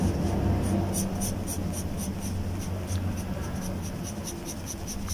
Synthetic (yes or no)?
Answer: no